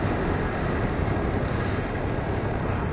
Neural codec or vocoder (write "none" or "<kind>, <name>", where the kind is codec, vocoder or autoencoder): none